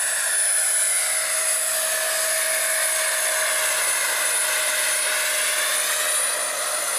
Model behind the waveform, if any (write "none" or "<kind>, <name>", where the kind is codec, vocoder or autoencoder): none